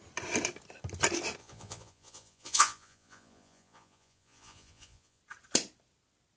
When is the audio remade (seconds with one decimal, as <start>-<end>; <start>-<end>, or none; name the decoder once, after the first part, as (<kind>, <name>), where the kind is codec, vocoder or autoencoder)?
1.4-5.2 (vocoder, Vocos)